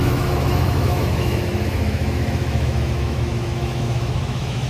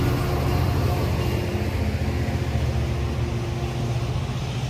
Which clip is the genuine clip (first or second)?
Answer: second